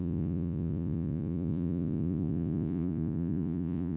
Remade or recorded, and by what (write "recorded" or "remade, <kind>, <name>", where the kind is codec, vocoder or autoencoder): remade, vocoder, Vocos